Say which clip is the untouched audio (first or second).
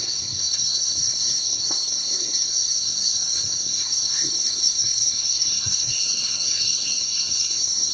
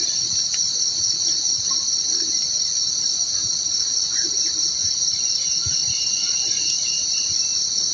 second